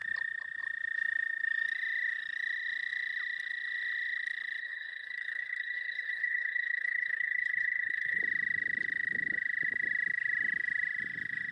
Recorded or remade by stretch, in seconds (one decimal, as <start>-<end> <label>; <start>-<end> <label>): 0.0-4.6 recorded; 4.6-8.2 remade; 8.2-11.5 recorded